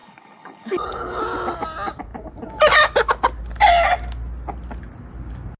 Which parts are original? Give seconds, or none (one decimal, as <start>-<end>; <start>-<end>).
1.2-5.6